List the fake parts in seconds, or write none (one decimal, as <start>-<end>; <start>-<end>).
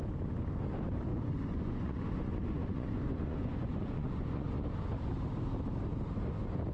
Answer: 1.1-4.6